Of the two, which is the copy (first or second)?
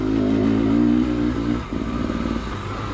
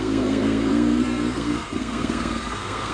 second